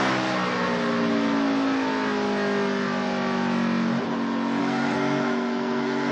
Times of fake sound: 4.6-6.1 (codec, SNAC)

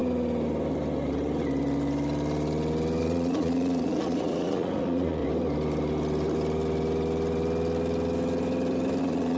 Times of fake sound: 3.0-5.2 (vocoder, Vocos); 9.0-9.4

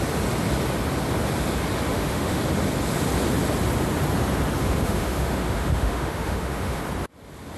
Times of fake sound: 1.9-2.4 (autoencoder, DAC-VAE); 4.6-6.8

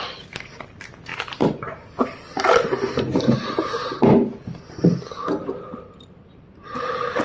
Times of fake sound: 0.0-1.1 (vocoder, BigVGAN v2); 5.3-7.2